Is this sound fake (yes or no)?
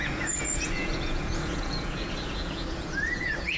yes